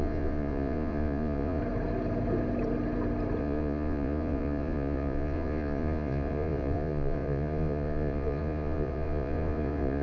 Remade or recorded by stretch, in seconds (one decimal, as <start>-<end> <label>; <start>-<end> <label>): 0.0-1.6 remade; 1.6-3.4 recorded; 3.4-10.0 remade